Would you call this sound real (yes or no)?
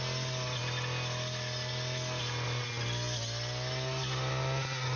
yes